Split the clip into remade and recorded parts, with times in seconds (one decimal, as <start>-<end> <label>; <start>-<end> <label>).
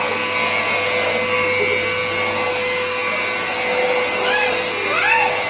0.0-5.5 recorded